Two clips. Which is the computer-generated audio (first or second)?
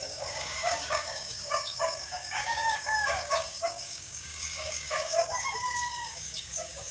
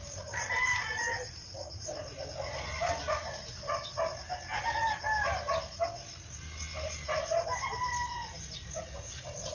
first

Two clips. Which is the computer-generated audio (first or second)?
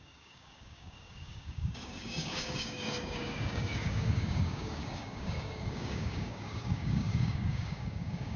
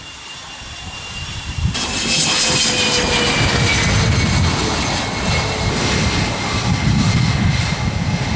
first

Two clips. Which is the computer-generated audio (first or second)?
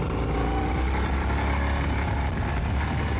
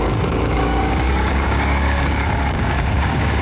second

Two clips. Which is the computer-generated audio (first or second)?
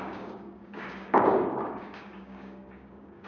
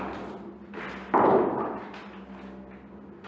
first